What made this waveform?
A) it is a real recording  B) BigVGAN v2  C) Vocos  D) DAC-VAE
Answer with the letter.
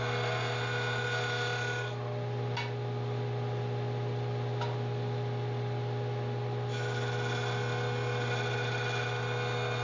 A